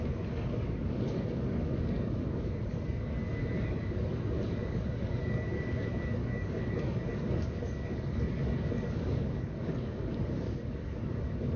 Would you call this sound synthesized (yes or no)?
yes